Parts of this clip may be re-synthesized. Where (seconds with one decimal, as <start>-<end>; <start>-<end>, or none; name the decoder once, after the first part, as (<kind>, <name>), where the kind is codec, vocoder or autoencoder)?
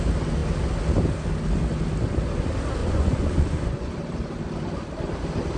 2.8-3.9 (vocoder, Vocos)